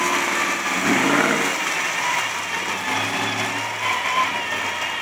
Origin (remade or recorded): recorded